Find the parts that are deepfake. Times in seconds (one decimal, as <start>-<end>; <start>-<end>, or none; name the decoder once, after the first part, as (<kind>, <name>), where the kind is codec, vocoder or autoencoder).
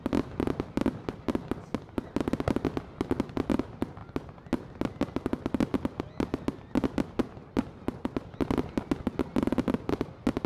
none